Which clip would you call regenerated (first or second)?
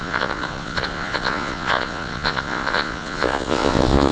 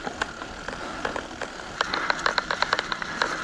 first